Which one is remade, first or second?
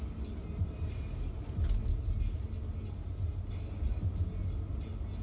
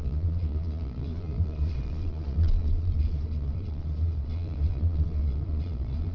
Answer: second